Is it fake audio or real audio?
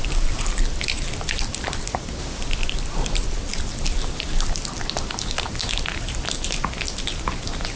real